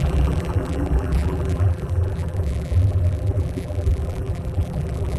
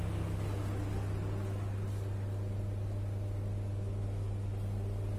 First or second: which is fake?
first